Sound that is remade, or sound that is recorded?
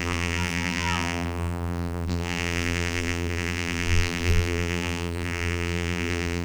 remade